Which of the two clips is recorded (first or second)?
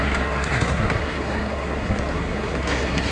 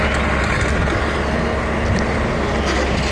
second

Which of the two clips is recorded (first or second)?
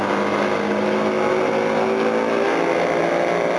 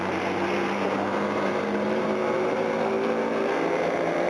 first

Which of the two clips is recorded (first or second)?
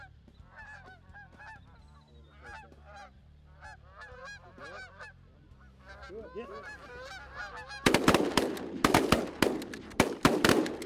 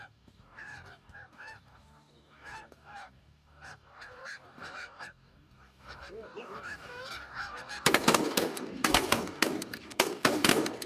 first